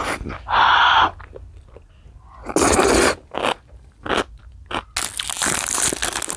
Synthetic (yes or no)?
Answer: no